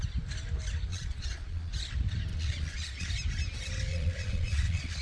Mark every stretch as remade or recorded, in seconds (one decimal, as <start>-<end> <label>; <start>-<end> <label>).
0.0-0.9 recorded; 0.9-1.7 remade; 1.7-2.3 recorded; 2.3-3.1 remade; 3.1-3.9 recorded; 3.9-5.0 remade